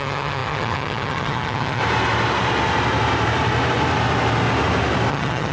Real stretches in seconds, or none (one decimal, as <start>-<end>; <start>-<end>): 1.8-5.1